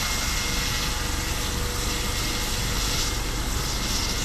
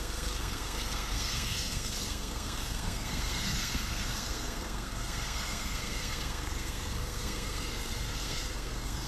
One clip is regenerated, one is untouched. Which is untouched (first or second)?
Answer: first